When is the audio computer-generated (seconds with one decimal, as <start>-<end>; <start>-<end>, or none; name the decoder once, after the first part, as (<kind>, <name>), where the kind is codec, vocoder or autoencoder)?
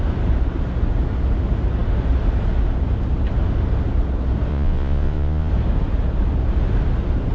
4.5-5.5 (vocoder, Vocos)